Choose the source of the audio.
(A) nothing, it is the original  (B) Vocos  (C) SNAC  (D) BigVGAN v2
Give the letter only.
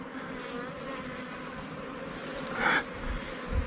A